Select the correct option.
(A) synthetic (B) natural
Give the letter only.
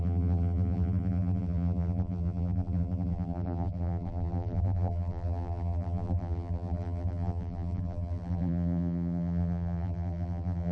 A